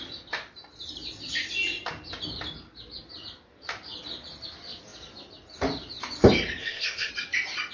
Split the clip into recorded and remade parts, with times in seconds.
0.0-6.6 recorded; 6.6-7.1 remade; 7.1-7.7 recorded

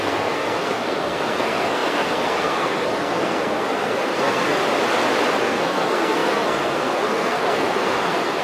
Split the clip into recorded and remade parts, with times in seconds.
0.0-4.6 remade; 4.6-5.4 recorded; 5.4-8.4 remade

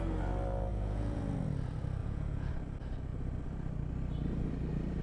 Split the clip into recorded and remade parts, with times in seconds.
0.0-0.7 recorded; 0.7-1.2 remade; 1.2-2.0 recorded; 2.0-2.5 remade; 2.5-5.0 recorded

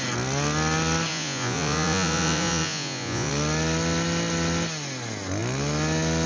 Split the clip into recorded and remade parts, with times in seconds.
0.0-1.1 recorded; 1.1-3.3 remade; 3.3-6.3 recorded